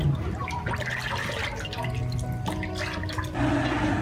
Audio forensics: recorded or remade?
recorded